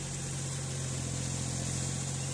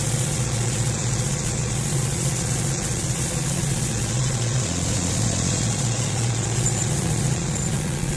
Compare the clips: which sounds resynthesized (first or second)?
second